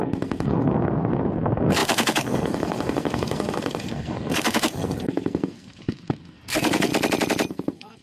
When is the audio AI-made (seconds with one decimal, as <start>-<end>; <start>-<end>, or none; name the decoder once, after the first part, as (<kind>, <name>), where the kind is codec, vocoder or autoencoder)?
0.0-6.9 (codec, SNAC); 7.5-8.0